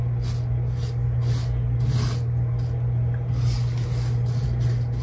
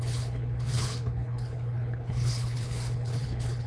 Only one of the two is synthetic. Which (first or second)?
second